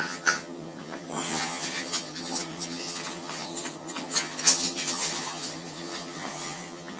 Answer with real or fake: fake